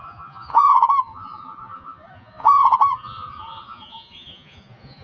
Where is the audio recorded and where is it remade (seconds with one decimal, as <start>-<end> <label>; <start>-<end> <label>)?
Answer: 0.0-5.0 remade